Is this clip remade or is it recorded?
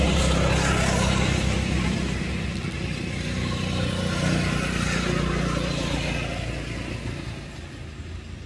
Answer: recorded